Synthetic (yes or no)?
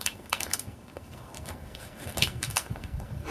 yes